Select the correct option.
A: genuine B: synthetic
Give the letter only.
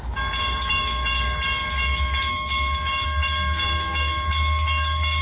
B